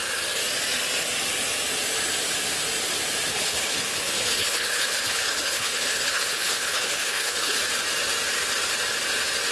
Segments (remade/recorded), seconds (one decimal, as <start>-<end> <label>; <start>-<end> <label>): 0.0-3.3 recorded; 3.3-7.6 remade; 7.6-9.5 recorded